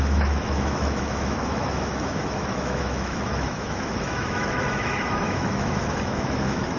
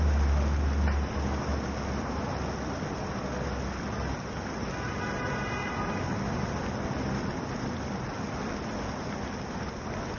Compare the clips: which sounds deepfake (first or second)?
first